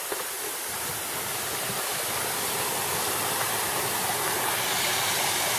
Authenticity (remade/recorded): recorded